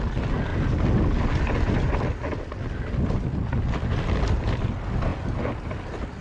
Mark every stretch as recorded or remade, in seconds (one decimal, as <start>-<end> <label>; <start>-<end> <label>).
0.0-6.2 recorded